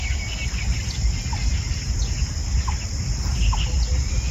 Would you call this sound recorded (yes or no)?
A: yes